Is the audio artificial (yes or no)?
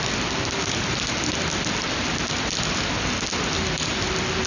no